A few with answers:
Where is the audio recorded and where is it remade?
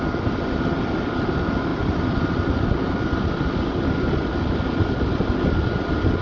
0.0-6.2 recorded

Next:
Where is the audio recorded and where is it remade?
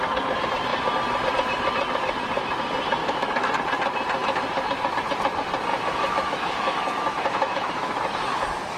0.0-3.0 recorded; 3.0-3.5 remade; 3.5-5.7 recorded; 5.7-8.0 remade; 8.0-8.8 recorded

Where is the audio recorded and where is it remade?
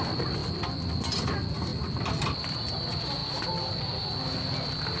0.0-0.4 recorded; 0.4-1.0 remade; 1.0-1.7 recorded; 1.7-2.2 remade; 2.2-5.0 recorded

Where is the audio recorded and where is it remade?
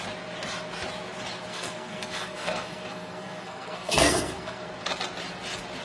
0.0-1.5 recorded; 1.5-4.7 remade; 4.7-5.8 recorded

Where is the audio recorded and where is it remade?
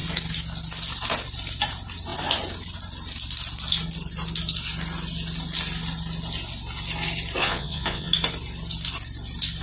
0.0-7.4 recorded; 7.4-8.1 remade; 8.1-9.6 recorded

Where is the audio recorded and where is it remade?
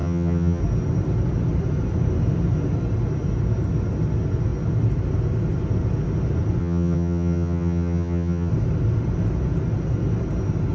0.0-0.6 remade; 0.6-6.6 recorded; 6.6-8.5 remade; 8.5-10.7 recorded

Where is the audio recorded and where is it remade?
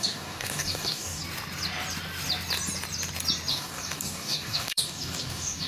0.0-1.2 remade; 1.2-3.5 recorded; 3.5-5.7 remade